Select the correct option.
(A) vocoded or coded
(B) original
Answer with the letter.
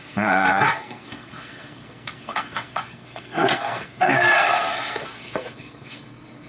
A